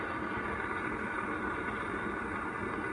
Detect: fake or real real